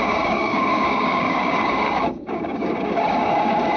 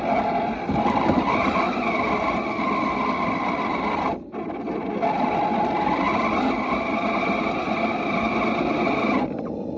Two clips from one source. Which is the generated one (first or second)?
first